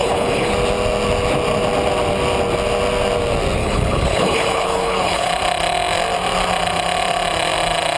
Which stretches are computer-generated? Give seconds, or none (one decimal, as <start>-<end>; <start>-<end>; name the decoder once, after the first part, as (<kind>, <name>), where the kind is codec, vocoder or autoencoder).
0.0-0.5 (codec, HILCodec); 3.6-5.3